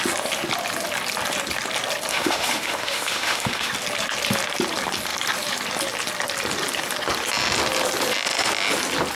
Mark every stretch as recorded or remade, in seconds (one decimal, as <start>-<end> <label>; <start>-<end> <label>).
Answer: 0.0-2.1 recorded; 2.1-3.7 remade; 3.7-9.1 recorded